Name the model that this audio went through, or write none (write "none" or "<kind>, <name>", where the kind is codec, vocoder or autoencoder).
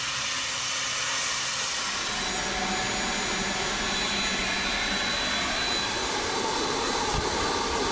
none